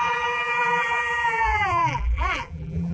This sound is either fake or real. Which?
fake